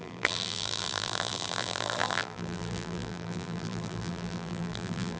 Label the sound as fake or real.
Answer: fake